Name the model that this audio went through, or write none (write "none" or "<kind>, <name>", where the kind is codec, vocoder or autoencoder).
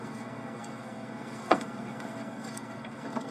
codec, SNAC